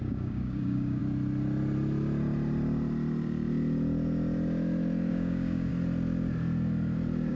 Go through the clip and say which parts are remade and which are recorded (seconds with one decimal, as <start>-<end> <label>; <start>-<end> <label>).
0.0-1.0 remade; 1.0-5.1 recorded; 5.1-5.7 remade; 5.7-7.3 recorded